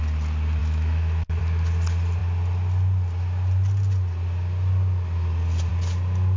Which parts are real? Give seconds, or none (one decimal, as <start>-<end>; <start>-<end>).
0.0-0.6; 1.4-6.4